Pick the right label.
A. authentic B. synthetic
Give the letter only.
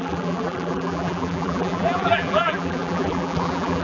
B